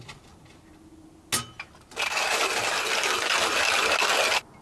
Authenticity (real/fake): real